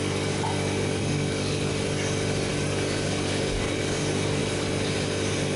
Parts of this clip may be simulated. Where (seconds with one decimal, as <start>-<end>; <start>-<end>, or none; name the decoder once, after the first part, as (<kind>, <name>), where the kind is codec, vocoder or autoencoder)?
0.0-1.7 (codec, DAC); 2.5-4.4